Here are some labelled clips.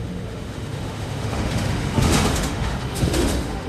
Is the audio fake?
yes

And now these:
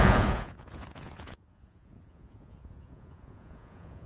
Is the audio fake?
yes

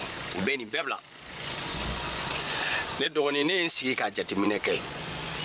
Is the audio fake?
yes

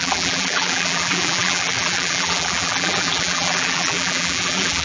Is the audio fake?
yes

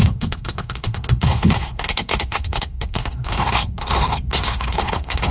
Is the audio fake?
yes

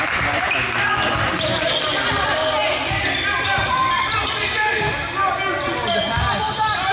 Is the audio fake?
no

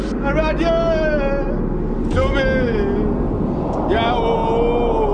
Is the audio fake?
no